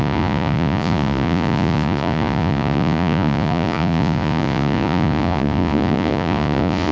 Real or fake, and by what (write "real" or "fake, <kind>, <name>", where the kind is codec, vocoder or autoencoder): fake, vocoder, Vocos